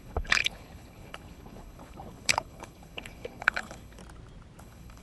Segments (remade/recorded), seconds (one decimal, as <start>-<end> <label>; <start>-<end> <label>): 0.0-4.0 remade; 4.0-4.6 recorded; 4.6-5.0 remade